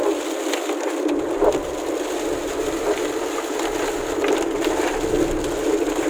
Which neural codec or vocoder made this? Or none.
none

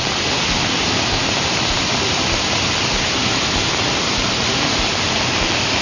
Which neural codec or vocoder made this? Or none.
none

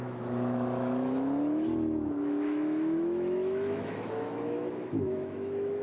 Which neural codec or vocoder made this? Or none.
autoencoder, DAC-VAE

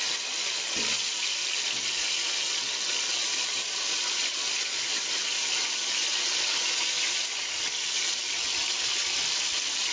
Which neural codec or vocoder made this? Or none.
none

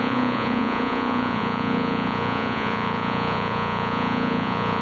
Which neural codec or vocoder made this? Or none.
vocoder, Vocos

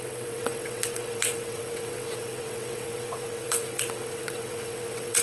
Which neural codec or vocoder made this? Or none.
vocoder, WaveNeXt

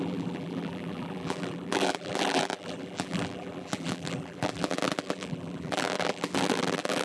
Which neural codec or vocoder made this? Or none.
vocoder, BigVGAN v2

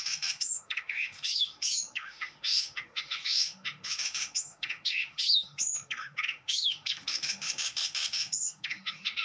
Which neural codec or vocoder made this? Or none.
autoencoder, DAC-VAE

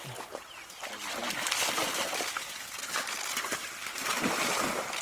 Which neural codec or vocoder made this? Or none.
none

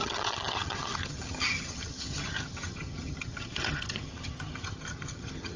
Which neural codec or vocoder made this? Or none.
vocoder, HiFi-GAN